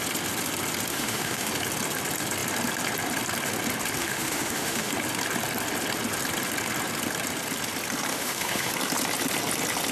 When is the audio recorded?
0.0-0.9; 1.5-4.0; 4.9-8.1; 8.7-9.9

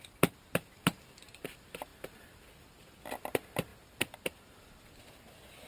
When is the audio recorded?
none

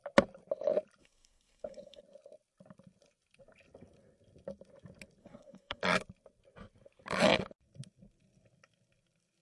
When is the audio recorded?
0.0-1.0; 2.0-5.2; 5.8-9.4

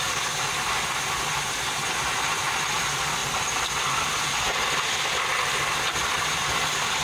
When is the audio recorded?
0.0-7.0

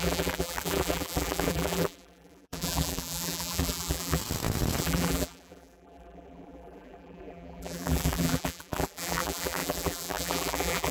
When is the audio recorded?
4.2-4.8

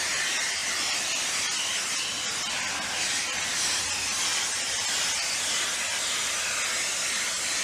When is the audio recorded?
0.0-0.6; 1.2-4.3; 5.6-7.6